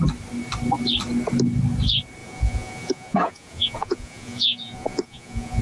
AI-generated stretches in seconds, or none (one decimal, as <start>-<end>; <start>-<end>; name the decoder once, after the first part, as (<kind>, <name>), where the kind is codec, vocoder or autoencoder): 2.2-5.6 (vocoder, Vocos)